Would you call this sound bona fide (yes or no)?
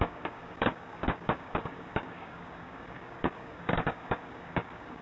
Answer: no